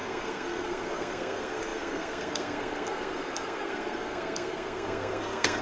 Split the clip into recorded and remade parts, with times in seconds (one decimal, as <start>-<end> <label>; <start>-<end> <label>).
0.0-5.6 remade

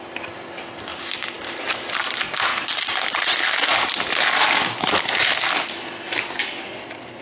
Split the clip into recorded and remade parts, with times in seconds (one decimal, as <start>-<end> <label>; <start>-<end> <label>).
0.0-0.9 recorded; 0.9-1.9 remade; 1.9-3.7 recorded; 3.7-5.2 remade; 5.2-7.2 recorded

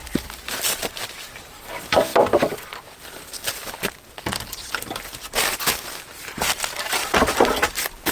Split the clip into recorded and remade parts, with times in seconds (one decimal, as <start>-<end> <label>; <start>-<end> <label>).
0.0-2.1 recorded; 2.1-5.2 remade; 5.2-8.1 recorded